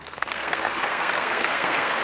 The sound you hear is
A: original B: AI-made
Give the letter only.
B